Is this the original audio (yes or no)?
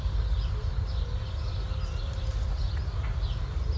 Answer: yes